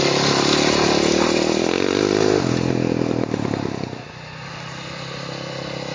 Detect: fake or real real